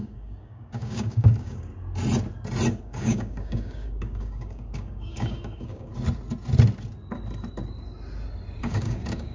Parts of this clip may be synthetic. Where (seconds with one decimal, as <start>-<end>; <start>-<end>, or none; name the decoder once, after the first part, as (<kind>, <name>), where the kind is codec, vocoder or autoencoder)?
0.0-1.7 (codec, DAC); 2.8-5.9; 8.6-9.3

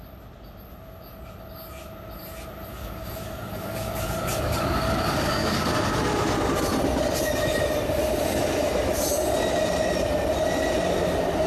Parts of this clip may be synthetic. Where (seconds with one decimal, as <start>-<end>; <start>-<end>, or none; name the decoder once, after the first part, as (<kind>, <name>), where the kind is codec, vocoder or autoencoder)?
2.7-5.7 (codec, DAC)

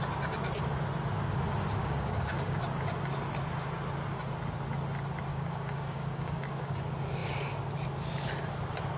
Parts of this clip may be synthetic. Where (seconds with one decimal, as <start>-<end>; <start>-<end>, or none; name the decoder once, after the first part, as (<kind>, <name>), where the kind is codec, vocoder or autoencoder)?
1.8-2.6 (codec, DAC); 5.3-6.7

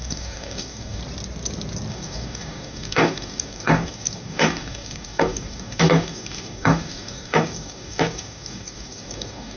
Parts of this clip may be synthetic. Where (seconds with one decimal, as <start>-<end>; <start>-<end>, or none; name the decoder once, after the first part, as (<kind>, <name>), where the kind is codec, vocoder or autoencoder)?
0.0-1.0 (codec, DAC); 1.9-9.6

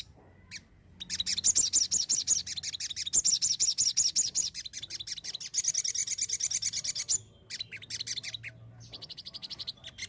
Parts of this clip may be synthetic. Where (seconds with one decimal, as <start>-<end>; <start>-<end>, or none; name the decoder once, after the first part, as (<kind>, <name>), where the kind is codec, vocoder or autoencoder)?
none

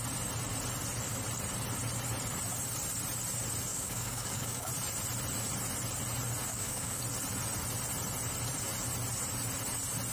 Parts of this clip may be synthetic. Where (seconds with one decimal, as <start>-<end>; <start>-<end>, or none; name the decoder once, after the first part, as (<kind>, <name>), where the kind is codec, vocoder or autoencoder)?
3.7-4.7 (codec, DAC); 6.5-7.0

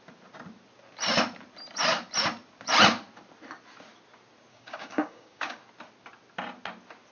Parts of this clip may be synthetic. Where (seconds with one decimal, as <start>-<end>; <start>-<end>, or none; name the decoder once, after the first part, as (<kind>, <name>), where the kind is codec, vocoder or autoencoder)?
4.5-5.6 (codec, DAC)